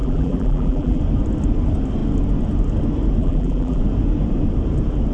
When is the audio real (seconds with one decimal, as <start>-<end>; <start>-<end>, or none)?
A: 1.0-3.2; 3.8-5.1